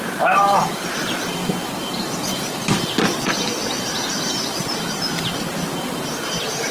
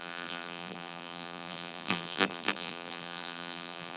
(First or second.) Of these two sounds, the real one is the first